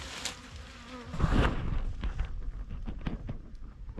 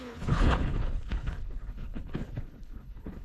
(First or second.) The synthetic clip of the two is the second